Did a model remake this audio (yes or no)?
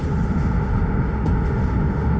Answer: yes